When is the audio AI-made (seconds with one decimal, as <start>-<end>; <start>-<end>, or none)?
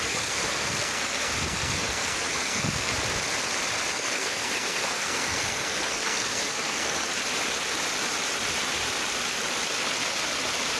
0.0-2.9; 3.9-7.1